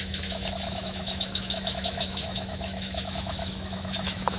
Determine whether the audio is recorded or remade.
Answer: remade